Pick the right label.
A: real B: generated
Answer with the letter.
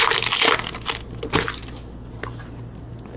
A